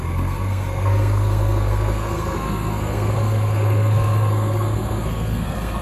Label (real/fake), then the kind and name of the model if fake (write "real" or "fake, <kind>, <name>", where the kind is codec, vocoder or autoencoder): fake, codec, SNAC